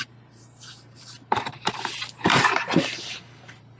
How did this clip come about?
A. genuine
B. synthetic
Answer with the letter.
B